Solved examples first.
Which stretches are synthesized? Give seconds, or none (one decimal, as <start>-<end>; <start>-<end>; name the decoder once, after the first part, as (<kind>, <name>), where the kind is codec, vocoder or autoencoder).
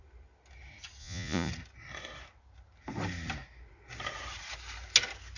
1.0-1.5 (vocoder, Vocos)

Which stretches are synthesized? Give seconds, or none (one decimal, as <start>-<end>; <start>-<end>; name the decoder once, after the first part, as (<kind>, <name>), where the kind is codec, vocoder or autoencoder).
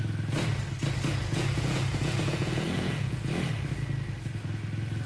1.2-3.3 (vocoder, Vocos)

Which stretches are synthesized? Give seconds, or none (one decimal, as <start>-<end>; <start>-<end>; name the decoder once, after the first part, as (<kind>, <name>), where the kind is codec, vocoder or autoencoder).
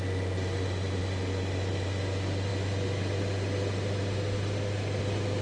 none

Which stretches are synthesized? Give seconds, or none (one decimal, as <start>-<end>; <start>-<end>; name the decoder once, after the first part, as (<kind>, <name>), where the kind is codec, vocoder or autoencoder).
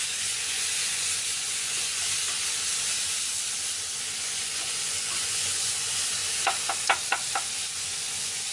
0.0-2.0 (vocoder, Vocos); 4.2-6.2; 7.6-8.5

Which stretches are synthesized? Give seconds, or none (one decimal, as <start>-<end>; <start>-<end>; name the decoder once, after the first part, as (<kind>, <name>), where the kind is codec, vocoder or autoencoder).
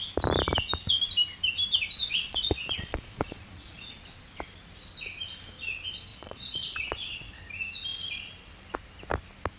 2.0-4.0 (vocoder, Vocos); 6.1-7.4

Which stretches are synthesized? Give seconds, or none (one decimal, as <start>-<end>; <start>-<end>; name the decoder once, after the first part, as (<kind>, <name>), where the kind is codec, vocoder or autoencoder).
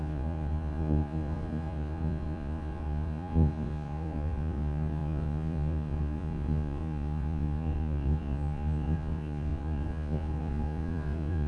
0.0-11.5 (vocoder, Vocos)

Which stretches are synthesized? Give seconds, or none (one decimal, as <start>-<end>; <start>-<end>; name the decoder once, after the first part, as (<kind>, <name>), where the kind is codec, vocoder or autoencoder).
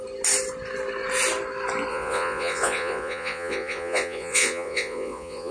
1.9-5.5 (vocoder, Vocos)